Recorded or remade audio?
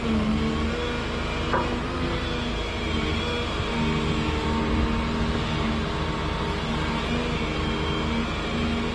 recorded